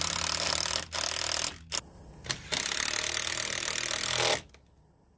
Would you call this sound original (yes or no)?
yes